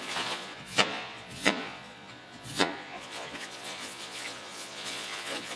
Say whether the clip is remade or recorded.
remade